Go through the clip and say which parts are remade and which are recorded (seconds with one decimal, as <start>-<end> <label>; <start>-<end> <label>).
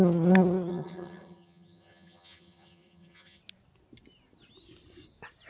0.0-0.7 recorded; 0.7-3.4 remade; 3.4-5.5 recorded